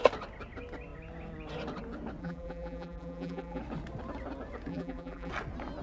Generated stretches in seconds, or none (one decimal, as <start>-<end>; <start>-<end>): 2.2-3.6; 4.7-5.3